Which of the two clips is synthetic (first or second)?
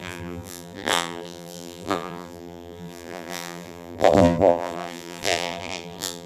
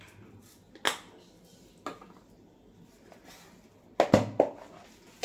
first